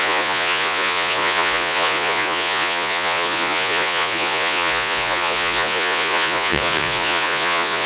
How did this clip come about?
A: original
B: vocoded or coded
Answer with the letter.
B